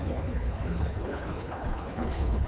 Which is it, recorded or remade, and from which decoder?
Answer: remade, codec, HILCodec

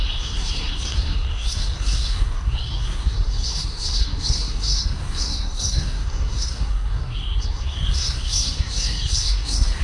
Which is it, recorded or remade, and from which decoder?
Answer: remade, codec, SNAC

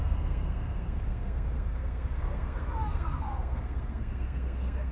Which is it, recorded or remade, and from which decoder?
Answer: remade, codec, SNAC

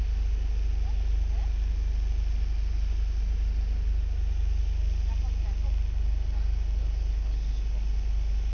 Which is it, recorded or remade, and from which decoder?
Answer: recorded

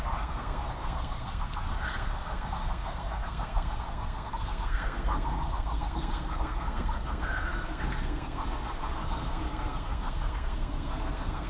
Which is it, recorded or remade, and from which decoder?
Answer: remade, codec, SNAC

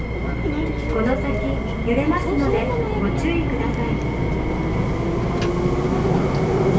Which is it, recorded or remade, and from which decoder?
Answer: recorded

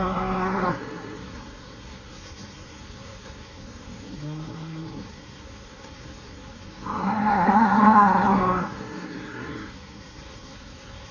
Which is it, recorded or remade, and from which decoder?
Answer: remade, codec, SNAC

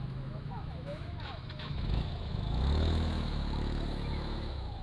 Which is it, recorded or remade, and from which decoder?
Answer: remade, autoencoder, DAC-VAE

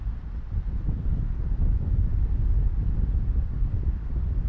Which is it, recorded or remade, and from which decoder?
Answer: recorded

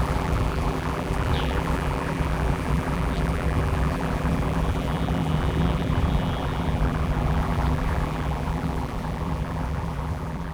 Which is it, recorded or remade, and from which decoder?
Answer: remade, vocoder, BigVGAN v2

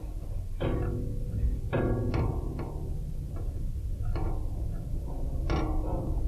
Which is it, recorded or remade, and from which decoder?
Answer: recorded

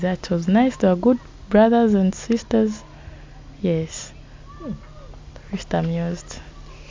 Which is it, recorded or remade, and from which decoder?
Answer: recorded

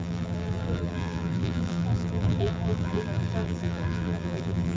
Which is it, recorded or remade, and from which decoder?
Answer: remade, vocoder, BigVGAN v2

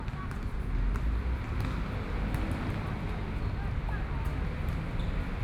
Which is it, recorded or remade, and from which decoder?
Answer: recorded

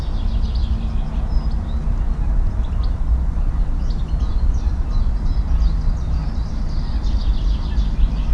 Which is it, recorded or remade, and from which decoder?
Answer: recorded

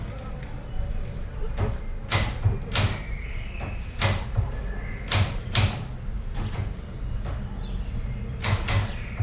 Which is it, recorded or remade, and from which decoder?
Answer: recorded